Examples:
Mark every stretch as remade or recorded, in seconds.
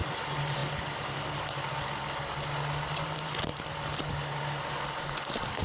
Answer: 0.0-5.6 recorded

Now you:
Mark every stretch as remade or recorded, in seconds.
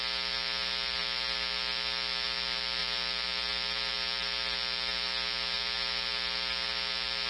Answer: 0.0-7.3 recorded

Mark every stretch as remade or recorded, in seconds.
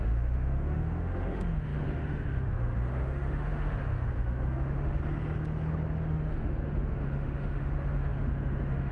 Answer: 0.0-5.0 remade; 5.0-6.1 recorded; 6.1-8.9 remade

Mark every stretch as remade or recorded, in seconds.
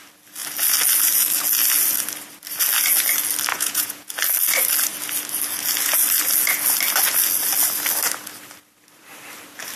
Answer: 0.0-3.5 recorded; 3.5-4.1 remade; 4.1-9.8 recorded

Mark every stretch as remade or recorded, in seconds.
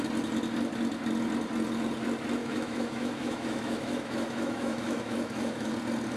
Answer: 0.0-2.4 recorded; 2.4-5.7 remade; 5.7-6.2 recorded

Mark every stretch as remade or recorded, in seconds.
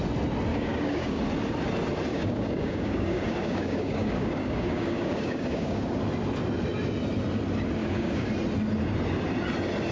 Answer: 0.0-0.5 recorded; 0.5-1.2 remade; 1.2-2.1 recorded; 2.1-6.0 remade; 6.0-7.8 recorded; 7.8-8.3 remade; 8.3-9.9 recorded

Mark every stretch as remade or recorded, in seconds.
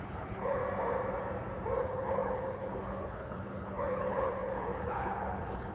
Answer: 0.0-0.6 remade; 0.6-1.8 recorded; 1.8-5.7 remade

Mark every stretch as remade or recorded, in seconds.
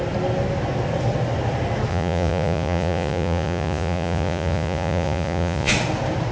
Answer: 0.0-1.9 recorded; 1.9-5.7 remade; 5.7-6.3 recorded